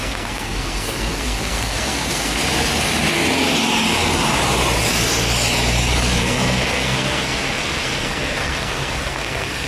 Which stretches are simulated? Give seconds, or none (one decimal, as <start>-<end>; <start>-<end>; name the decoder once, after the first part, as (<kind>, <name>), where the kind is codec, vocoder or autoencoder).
0.0-2.4 (codec, SNAC); 6.2-9.7